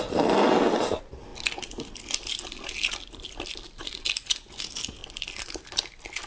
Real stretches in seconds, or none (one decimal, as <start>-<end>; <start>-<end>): 0.0-5.0